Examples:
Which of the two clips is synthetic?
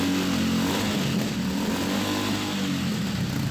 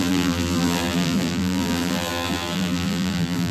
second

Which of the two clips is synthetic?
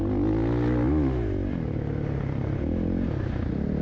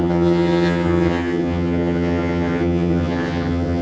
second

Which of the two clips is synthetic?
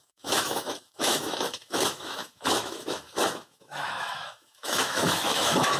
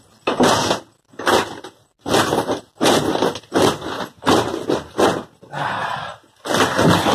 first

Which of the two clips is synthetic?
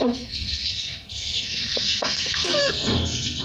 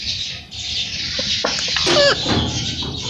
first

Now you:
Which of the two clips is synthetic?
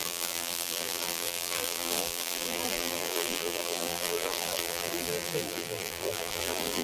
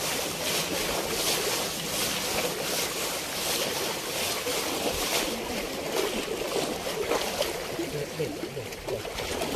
first